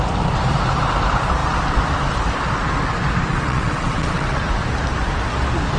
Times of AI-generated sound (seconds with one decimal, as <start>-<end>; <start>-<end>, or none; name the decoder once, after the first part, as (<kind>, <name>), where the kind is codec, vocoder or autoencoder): 3.3-4.4 (vocoder, WaveNeXt)